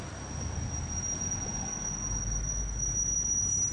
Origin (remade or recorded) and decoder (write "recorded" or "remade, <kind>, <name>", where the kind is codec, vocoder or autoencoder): recorded